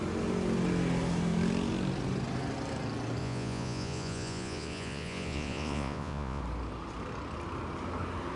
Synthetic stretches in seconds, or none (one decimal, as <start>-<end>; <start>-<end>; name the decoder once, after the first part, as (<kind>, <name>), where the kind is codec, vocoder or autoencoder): 3.2-6.4 (vocoder, Vocos)